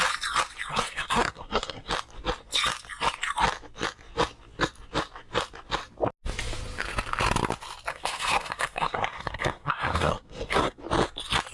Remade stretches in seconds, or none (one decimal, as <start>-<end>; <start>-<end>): 0.7-1.9; 7.9-10.8